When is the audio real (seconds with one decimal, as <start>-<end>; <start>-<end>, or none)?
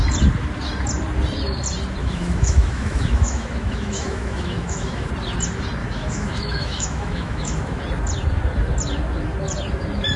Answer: 0.0-2.0; 5.1-5.8; 7.8-10.2